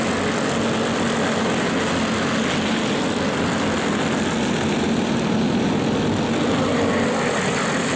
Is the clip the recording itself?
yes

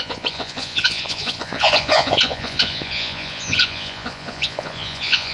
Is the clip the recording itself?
no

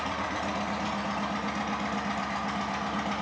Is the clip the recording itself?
yes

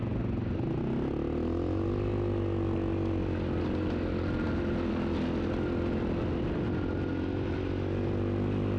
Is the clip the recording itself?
yes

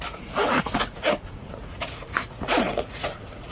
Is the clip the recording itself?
no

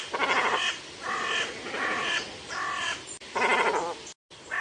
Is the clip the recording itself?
yes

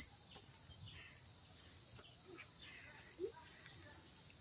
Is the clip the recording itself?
yes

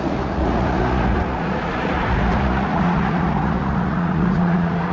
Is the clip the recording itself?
no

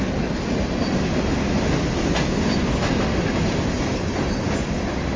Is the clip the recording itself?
yes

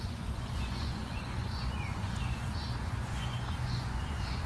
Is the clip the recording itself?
no